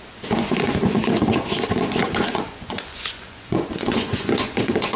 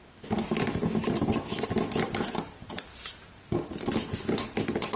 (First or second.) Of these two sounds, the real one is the second